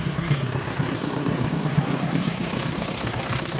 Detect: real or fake fake